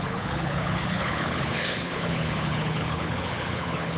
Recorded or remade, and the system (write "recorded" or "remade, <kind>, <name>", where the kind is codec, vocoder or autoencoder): remade, codec, HILCodec